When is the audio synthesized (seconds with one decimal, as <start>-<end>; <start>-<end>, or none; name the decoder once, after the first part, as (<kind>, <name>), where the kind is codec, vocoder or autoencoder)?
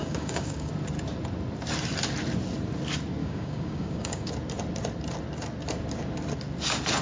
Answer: 0.0-0.7 (codec, DAC); 3.2-4.3